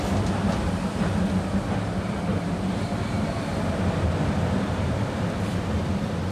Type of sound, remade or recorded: recorded